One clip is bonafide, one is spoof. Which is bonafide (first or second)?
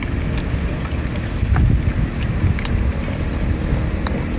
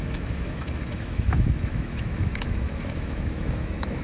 first